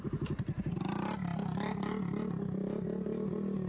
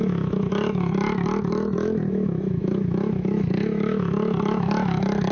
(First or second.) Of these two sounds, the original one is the first